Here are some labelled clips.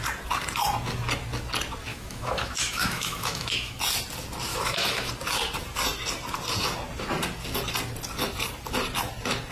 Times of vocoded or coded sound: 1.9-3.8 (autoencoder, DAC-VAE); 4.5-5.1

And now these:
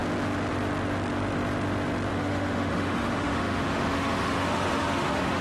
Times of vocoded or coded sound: 2.1-5.4 (autoencoder, DAC-VAE)

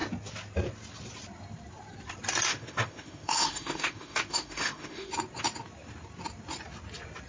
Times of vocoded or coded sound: 2.5-5.1 (autoencoder, DAC-VAE)

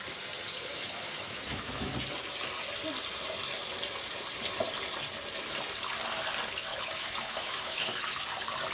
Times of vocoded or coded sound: 0.7-1.9 (autoencoder, DAC-VAE); 6.7-8.2

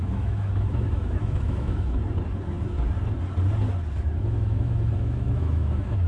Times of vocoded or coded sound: 0.0-2.0 (autoencoder, DAC-VAE); 4.1-6.1

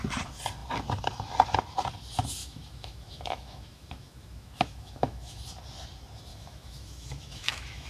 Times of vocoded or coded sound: 2.4-5.4 (autoencoder, DAC-VAE); 6.3-7.9

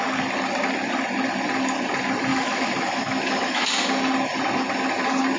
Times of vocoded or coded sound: 2.3-3.7 (autoencoder, DAC-VAE)

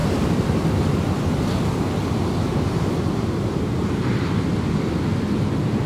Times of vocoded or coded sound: none